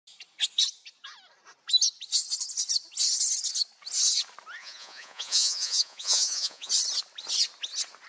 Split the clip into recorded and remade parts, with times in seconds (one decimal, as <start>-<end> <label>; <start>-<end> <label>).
0.0-4.6 recorded; 4.6-6.7 remade; 6.7-8.1 recorded